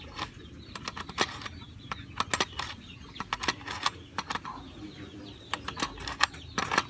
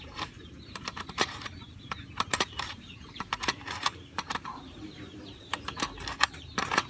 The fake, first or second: second